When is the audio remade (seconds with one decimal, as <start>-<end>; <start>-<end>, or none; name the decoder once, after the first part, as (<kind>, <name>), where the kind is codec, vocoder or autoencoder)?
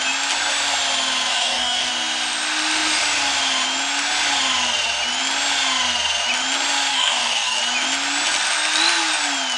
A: 1.3-1.9 (codec, DAC); 6.9-7.6